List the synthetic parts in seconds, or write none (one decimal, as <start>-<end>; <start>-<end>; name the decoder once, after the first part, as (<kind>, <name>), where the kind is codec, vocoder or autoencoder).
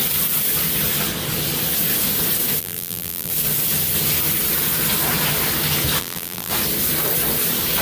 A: 2.6-3.3 (vocoder, BigVGAN v2); 6.0-6.5